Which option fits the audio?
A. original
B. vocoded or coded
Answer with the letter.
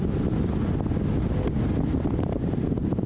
A